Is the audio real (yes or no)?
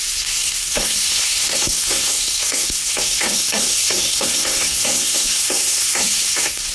no